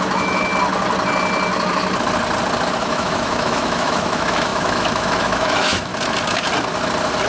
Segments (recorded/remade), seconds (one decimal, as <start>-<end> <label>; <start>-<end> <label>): 0.0-0.5 remade; 0.5-2.8 recorded; 2.8-5.9 remade; 5.9-7.3 recorded